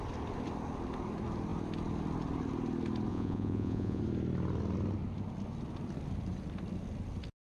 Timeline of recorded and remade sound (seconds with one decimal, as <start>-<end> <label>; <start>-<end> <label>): 0.0-3.1 recorded; 3.1-4.0 remade; 4.0-7.4 recorded